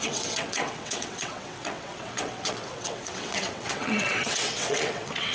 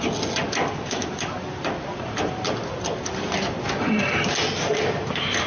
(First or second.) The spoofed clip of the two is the first